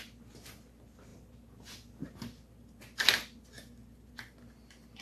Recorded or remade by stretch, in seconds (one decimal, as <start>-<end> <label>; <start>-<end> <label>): 0.0-5.0 recorded